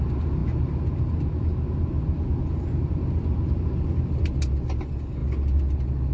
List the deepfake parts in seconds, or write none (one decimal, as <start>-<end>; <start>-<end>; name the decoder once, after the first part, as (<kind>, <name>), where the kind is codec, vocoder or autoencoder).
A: none